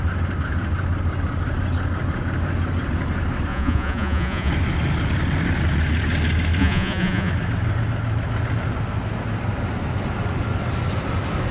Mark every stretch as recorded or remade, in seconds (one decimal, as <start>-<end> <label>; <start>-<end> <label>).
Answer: 0.0-3.5 recorded; 3.5-4.5 remade; 4.5-6.6 recorded; 6.6-7.3 remade; 7.3-11.5 recorded